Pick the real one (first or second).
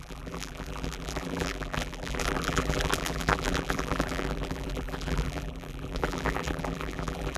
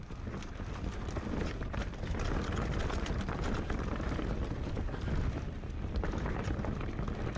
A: second